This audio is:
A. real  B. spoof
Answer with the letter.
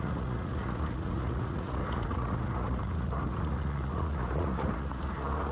B